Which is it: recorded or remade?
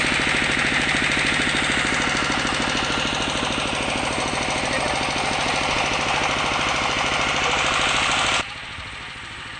recorded